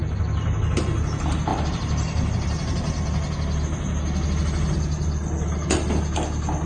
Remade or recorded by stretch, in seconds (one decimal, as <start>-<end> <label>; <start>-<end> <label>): 0.0-0.8 remade; 0.8-1.5 recorded; 1.5-2.9 remade; 2.9-6.7 recorded